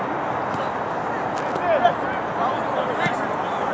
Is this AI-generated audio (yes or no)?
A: no